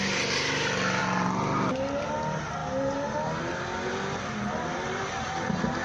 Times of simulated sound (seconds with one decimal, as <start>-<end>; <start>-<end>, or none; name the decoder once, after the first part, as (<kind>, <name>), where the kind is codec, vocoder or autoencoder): none